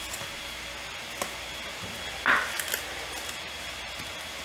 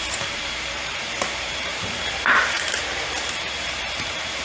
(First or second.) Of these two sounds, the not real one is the second